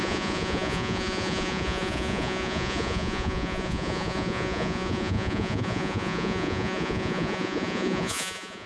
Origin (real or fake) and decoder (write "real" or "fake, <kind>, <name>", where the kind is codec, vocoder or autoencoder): fake, vocoder, Vocos